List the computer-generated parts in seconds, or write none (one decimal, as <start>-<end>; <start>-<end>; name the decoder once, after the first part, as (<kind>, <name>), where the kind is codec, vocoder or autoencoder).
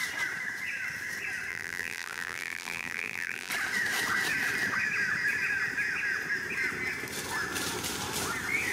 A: 1.5-3.5 (vocoder, BigVGAN v2)